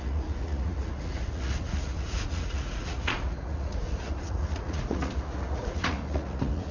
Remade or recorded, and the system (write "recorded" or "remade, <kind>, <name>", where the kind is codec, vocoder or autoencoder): remade, vocoder, Vocos